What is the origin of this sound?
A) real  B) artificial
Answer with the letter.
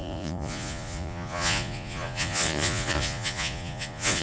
B